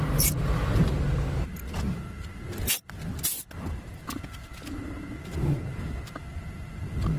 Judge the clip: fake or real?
real